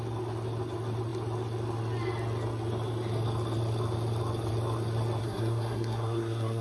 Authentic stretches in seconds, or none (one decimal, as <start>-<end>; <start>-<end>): 0.0-5.2

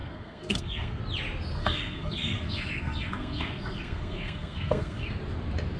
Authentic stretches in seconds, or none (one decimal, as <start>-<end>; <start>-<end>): 1.0-1.6; 5.1-5.8

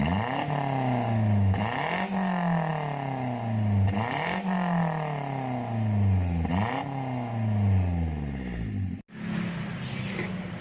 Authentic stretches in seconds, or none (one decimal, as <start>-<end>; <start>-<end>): 0.0-10.6

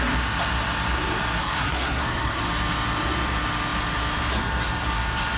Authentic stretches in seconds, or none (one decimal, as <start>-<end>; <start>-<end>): 0.0-1.4; 2.4-5.4

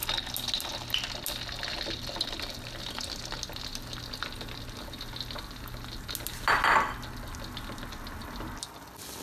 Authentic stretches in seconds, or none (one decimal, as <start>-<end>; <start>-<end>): 0.0-9.2

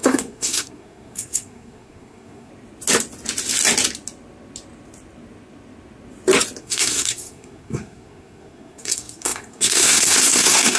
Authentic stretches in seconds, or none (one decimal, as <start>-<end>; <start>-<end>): 2.5-6.6